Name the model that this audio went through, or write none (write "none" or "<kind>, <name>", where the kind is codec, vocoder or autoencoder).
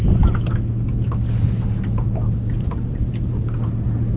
none